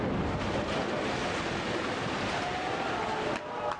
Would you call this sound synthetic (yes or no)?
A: no